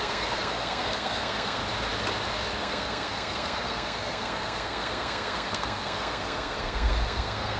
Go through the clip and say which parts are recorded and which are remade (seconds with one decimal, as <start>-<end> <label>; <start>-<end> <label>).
0.0-1.6 remade; 1.6-2.6 recorded; 2.6-7.6 remade